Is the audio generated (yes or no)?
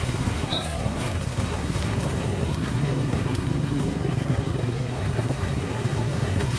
yes